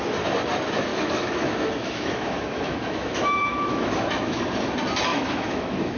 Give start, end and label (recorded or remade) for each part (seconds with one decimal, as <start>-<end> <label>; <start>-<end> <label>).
0.0-0.9 recorded; 0.9-4.4 remade; 4.4-5.1 recorded; 5.1-6.0 remade